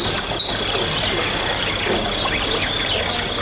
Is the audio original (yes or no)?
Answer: yes